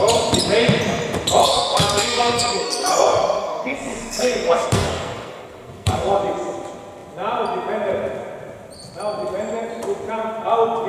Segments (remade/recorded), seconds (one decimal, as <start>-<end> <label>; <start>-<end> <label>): 0.0-1.4 recorded; 1.4-6.2 remade; 6.2-10.9 recorded